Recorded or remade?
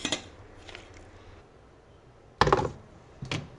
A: recorded